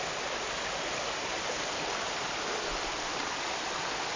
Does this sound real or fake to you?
real